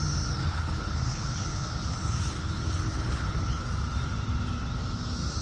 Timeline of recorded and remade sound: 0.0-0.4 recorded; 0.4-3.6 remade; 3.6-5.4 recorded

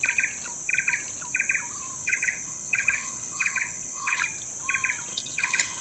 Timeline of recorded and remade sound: 0.0-2.0 recorded; 2.0-4.2 remade; 4.2-5.1 recorded; 5.1-5.8 remade

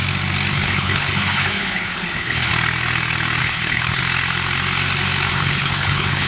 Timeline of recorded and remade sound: 0.0-0.5 recorded; 0.5-2.5 remade; 2.5-3.4 recorded; 3.4-4.0 remade; 4.0-5.3 recorded; 5.3-6.3 remade

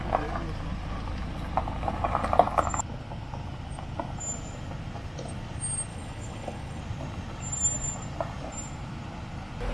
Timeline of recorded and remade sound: 0.0-5.9 recorded; 5.9-6.8 remade; 6.8-9.7 recorded